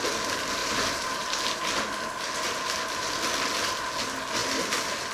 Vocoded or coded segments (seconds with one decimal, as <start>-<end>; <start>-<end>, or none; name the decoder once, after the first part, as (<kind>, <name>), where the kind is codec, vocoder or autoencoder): 0.6-1.4 (vocoder, BigVGAN v2)